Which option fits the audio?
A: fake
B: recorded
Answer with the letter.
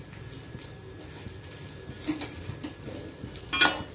B